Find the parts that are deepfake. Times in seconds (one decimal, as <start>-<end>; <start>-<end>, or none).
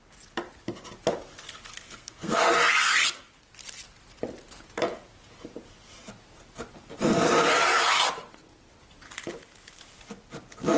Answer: 1.7-2.5